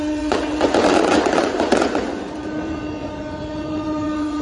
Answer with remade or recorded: remade